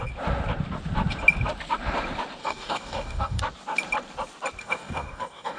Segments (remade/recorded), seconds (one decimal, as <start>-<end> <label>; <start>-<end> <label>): 0.0-2.4 recorded; 2.4-3.4 remade; 3.4-4.6 recorded; 4.6-5.6 remade